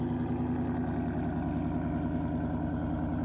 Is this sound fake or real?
real